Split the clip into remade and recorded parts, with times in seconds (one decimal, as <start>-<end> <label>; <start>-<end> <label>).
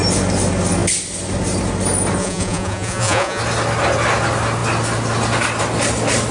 0.0-2.2 recorded; 2.2-3.4 remade; 3.4-6.3 recorded